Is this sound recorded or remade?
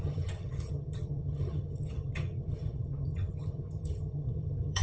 remade